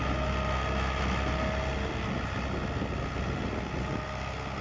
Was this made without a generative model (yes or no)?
yes